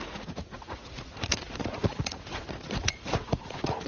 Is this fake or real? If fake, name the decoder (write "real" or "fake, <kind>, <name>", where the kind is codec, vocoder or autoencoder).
fake, vocoder, Vocos